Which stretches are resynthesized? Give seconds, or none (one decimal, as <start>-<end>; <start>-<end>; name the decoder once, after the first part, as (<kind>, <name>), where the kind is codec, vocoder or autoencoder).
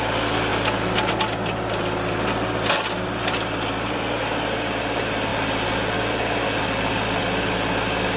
none